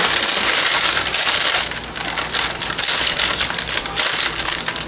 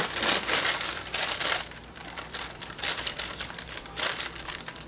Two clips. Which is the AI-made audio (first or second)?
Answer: second